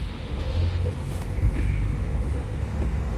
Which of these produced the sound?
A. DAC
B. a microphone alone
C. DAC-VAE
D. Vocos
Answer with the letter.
C